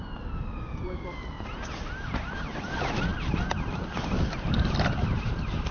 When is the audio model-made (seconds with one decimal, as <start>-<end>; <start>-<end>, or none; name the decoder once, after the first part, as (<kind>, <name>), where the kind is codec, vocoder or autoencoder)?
none